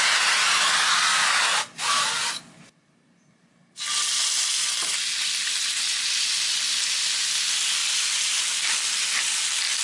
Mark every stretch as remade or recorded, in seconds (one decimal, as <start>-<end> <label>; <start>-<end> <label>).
0.0-9.8 recorded